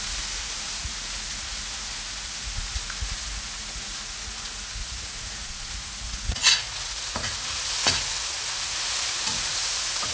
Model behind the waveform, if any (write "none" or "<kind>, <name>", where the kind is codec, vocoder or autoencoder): vocoder, Vocos